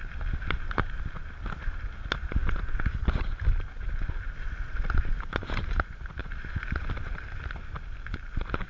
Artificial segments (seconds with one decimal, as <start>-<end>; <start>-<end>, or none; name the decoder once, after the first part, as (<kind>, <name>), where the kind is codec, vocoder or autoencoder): none